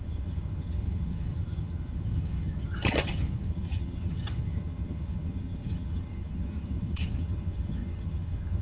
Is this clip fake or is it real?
fake